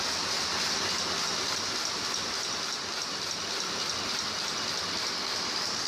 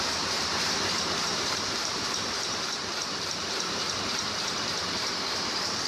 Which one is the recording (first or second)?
first